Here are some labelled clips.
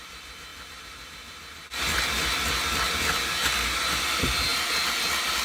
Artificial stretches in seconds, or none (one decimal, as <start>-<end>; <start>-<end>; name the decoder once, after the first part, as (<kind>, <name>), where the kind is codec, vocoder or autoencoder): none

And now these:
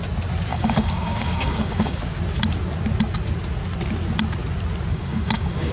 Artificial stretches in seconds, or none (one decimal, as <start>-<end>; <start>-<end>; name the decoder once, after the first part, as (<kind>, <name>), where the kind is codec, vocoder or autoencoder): 0.5-2.0 (codec, DAC); 4.9-5.7

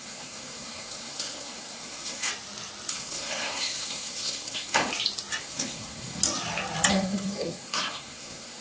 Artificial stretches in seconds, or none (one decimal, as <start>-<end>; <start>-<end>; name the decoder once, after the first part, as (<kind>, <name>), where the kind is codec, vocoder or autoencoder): 0.0-2.3 (codec, SNAC); 2.9-4.9; 5.4-6.2; 6.9-8.6

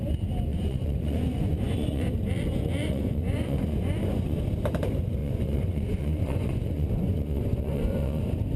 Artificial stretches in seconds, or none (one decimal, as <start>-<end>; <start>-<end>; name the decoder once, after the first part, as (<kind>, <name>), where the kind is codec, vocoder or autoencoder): 0.5-2.1 (vocoder, Vocos); 2.8-4.4; 5.2-8.2

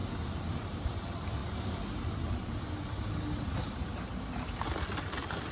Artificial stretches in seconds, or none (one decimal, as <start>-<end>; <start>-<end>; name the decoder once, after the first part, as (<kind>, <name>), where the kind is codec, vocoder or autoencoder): none